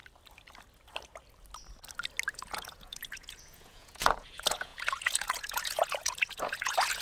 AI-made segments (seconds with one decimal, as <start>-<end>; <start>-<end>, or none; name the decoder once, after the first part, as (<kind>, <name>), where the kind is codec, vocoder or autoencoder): 2.3-7.0 (vocoder, Vocos)